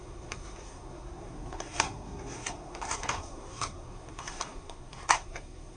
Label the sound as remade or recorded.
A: remade